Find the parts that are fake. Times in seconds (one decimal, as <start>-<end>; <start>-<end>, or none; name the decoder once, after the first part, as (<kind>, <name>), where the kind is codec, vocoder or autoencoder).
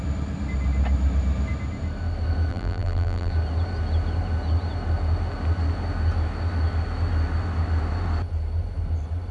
2.5-3.3 (vocoder, BigVGAN v2)